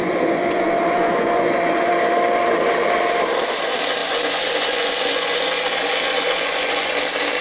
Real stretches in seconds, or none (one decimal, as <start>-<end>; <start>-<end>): 1.9-4.0; 7.0-7.4